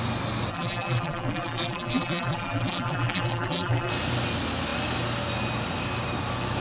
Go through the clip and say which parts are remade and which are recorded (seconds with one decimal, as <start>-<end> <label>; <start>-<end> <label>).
0.0-0.5 recorded; 0.5-3.9 remade; 3.9-6.6 recorded